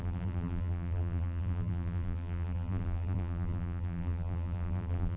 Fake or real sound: fake